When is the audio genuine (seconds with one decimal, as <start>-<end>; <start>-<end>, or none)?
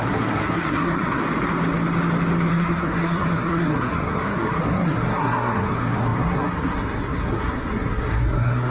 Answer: 1.2-2.5